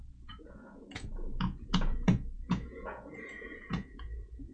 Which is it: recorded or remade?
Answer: remade